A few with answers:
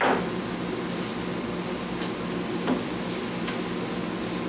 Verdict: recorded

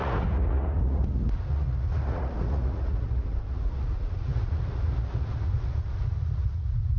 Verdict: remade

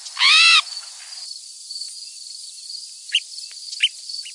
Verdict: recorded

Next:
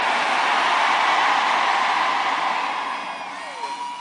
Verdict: recorded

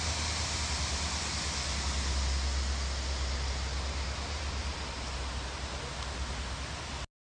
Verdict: recorded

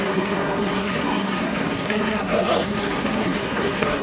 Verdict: remade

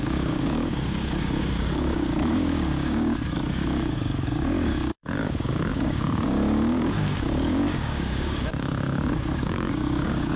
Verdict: remade